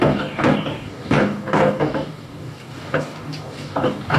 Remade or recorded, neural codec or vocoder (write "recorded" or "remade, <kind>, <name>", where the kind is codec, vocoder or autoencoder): remade, codec, DAC